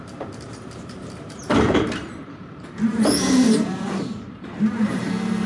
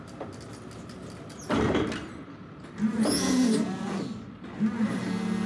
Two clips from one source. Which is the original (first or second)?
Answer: second